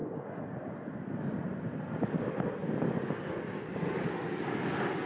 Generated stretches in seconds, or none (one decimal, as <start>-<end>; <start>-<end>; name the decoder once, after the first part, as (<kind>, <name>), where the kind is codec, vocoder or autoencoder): none

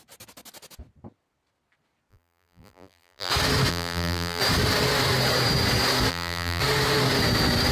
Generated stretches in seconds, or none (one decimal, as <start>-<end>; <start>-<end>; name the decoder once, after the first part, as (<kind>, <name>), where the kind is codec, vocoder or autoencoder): 2.1-3.3 (vocoder, BigVGAN v2); 3.7-4.4; 6.1-6.6